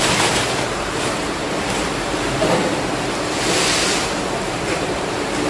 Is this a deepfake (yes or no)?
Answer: yes